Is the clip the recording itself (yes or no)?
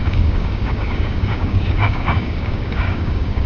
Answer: no